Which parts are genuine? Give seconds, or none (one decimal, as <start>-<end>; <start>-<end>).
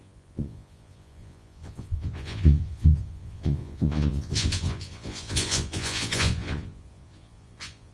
none